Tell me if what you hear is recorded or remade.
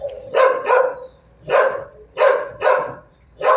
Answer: remade